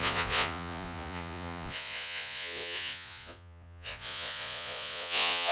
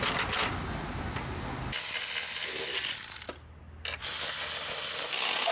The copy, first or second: first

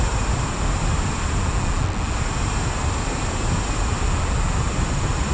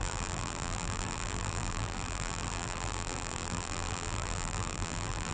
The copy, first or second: second